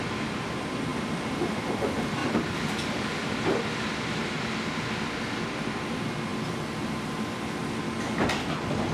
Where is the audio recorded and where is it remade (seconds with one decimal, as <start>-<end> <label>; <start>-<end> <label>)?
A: 0.0-0.9 recorded; 0.9-1.6 remade; 1.6-6.3 recorded; 6.3-7.0 remade; 7.0-8.9 recorded

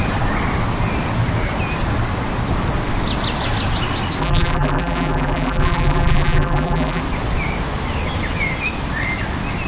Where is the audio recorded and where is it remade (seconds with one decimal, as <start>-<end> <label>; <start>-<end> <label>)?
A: 0.0-4.2 recorded; 4.2-7.0 remade; 7.0-9.7 recorded

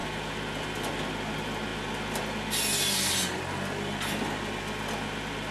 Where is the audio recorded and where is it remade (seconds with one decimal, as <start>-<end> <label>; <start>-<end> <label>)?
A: 0.0-5.5 recorded

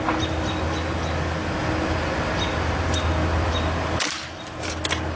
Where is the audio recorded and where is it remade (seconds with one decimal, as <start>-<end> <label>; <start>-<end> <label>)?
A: 0.0-5.2 recorded